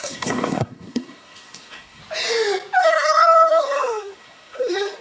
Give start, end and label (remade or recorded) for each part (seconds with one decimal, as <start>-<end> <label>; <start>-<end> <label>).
0.0-2.0 remade; 2.0-2.8 recorded; 2.8-5.0 remade